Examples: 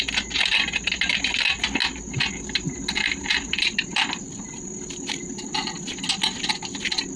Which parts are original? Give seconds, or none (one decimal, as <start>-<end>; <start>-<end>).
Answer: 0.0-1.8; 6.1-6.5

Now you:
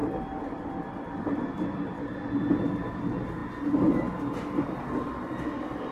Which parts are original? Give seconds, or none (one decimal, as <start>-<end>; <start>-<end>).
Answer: 0.0-5.9

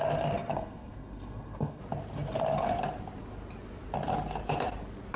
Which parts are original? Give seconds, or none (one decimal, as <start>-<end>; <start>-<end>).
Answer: 0.0-0.5; 1.8-5.2

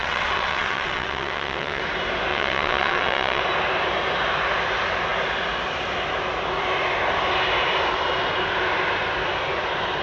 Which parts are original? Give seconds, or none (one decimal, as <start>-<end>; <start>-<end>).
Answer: 1.8-2.3; 3.4-10.0